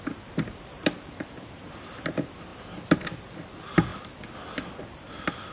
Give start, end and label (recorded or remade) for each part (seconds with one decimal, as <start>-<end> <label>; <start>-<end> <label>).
0.0-5.5 recorded